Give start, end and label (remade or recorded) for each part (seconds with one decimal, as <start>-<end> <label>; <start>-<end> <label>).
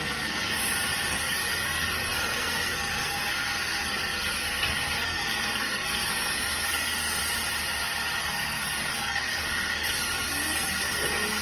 0.0-0.6 remade; 0.6-1.1 recorded; 1.1-7.2 remade; 7.2-8.2 recorded; 8.2-11.4 remade